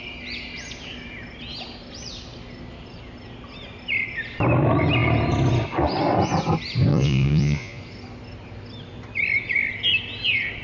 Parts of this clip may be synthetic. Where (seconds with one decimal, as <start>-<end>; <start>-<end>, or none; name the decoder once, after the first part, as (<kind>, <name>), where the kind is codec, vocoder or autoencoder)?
6.9-7.8 (vocoder, Vocos)